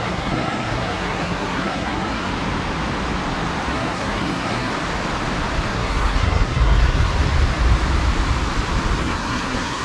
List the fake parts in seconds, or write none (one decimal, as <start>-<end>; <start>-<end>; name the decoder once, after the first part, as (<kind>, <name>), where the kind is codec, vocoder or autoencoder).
0.0-2.3 (codec, SNAC); 3.7-4.7; 5.7-7.1; 9.0-9.8